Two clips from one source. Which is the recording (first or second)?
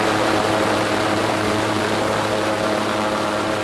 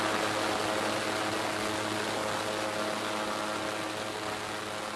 second